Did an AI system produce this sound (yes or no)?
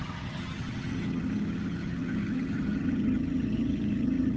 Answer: yes